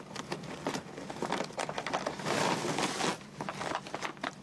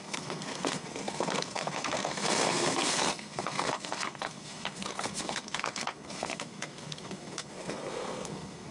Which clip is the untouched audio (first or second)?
first